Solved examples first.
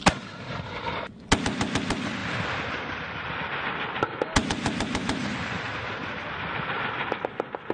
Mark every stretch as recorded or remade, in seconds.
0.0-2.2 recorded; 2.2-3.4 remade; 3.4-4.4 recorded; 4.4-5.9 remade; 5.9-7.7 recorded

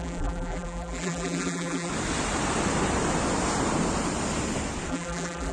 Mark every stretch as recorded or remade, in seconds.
0.0-1.9 remade; 1.9-4.9 recorded; 4.9-5.5 remade

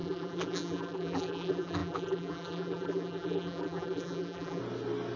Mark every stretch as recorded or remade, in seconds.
0.0-4.6 remade; 4.6-5.2 recorded